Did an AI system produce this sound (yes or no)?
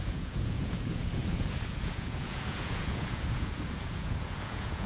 yes